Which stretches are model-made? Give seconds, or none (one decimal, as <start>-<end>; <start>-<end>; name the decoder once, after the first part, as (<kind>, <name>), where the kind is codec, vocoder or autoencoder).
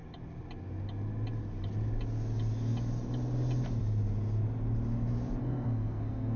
5.4-6.4 (codec, SNAC)